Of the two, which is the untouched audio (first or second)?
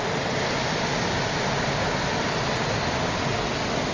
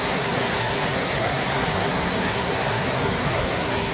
first